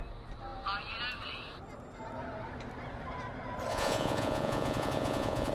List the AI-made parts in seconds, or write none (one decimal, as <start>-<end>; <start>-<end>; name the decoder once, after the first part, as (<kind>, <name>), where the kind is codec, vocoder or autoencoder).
3.7-5.5 (vocoder, Vocos)